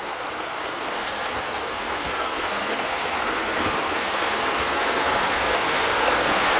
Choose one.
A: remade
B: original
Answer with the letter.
A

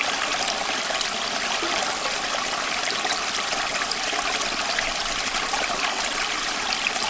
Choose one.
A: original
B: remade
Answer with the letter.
A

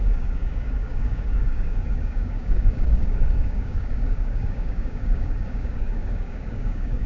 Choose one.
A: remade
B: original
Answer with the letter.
A